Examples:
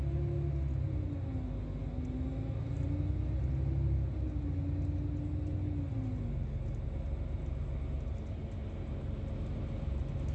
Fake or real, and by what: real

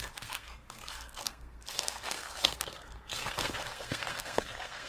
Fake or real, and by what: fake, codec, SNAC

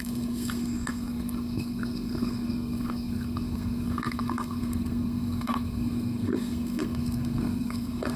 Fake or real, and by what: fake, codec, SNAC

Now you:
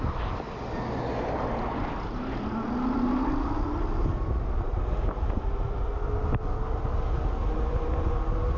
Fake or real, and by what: real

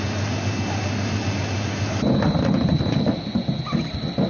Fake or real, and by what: real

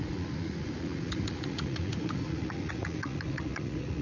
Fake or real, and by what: fake, vocoder, Vocos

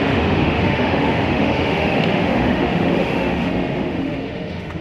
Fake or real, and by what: fake, autoencoder, DAC-VAE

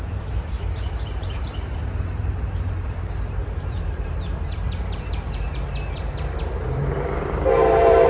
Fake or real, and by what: fake, vocoder, BigVGAN v2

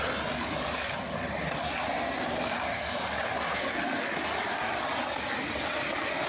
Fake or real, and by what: real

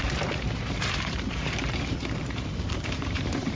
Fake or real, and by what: fake, vocoder, BigVGAN v2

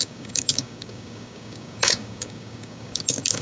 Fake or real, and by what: fake, codec, DAC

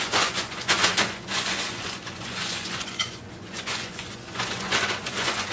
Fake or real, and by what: fake, vocoder, Vocos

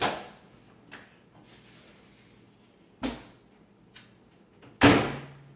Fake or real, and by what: real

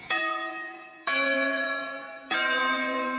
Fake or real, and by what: fake, vocoder, Vocos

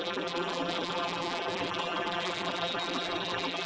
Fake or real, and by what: fake, vocoder, BigVGAN v2